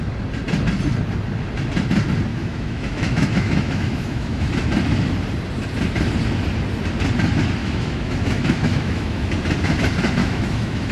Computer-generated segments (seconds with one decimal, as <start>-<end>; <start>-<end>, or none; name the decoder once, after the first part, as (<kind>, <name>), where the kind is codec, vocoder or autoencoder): 2.3-4.5 (autoencoder, DAC-VAE); 7.6-9.3; 10.2-10.9